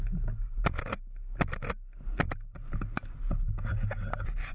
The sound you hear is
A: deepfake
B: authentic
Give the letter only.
B